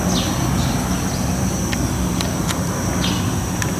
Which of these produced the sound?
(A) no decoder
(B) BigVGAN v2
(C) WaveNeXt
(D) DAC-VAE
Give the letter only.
A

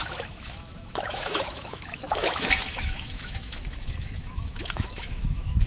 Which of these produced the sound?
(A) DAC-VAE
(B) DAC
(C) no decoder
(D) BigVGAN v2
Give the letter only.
A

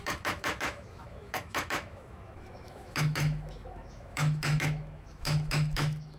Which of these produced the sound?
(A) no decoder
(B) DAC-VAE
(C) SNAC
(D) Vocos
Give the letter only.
B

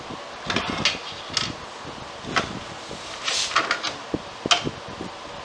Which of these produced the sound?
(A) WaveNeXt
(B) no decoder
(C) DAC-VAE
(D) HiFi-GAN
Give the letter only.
B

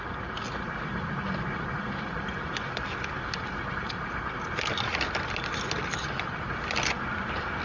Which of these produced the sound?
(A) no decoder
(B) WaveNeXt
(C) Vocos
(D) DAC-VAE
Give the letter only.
A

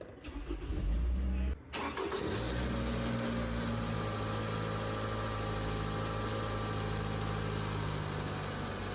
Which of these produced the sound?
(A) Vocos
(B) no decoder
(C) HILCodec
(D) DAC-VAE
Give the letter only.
B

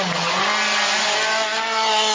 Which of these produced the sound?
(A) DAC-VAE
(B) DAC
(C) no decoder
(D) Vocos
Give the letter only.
C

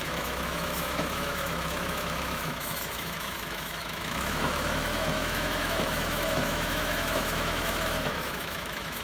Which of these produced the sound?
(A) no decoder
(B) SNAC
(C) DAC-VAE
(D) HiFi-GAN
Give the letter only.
C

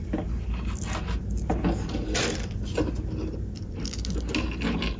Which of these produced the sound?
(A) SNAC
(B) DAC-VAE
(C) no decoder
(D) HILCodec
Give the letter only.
C